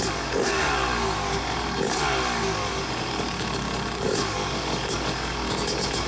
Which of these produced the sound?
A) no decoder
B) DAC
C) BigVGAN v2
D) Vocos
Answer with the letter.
B